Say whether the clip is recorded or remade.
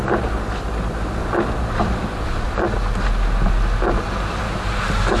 recorded